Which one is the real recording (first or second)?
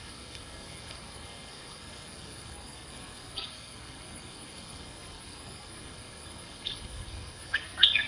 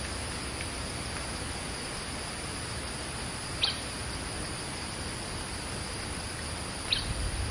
second